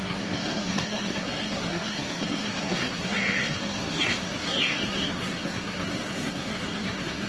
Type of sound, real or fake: fake